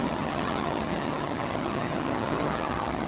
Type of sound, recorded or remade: remade